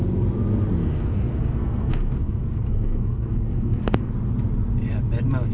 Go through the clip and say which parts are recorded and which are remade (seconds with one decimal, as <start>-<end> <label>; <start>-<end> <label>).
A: 0.0-0.8 recorded; 0.8-4.1 remade; 4.1-5.5 recorded